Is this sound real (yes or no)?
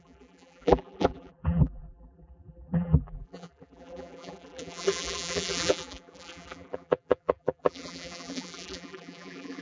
no